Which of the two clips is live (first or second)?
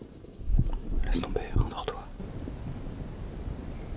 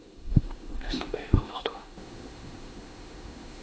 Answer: first